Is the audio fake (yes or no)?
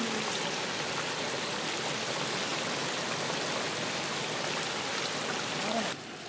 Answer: no